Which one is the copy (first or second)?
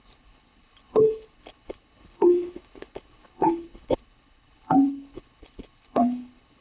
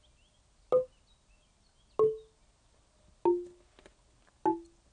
first